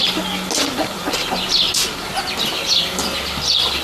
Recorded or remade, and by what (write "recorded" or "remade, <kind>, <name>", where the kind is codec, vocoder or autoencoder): recorded